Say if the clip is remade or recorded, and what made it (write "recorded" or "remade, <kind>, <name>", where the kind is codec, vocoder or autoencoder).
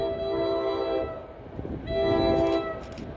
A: recorded